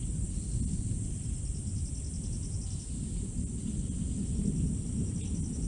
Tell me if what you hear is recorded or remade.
recorded